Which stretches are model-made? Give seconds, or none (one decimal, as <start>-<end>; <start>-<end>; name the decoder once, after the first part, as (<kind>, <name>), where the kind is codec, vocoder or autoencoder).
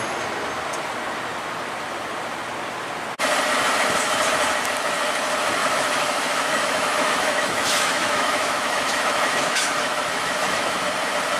5.6-10.8 (autoencoder, DAC-VAE)